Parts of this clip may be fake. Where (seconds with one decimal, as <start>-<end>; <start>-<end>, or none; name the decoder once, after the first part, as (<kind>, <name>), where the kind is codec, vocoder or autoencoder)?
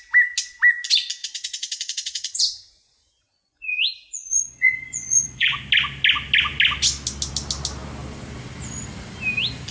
1.2-5.6 (vocoder, Vocos)